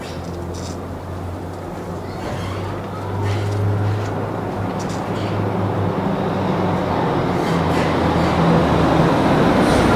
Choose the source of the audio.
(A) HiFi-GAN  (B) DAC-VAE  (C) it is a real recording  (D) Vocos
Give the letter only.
C